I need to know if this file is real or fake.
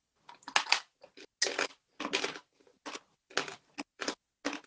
real